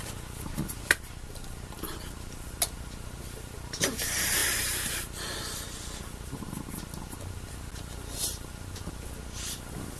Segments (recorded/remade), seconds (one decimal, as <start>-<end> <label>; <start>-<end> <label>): 0.0-10.0 recorded